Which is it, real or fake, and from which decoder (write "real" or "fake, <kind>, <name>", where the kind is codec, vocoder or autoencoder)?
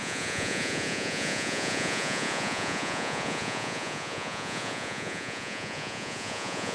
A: fake, vocoder, Vocos